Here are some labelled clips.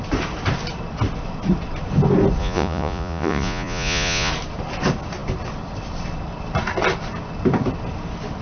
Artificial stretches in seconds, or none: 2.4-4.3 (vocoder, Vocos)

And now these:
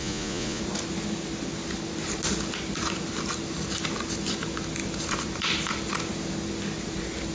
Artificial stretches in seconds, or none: 0.0-0.6 (vocoder, Vocos)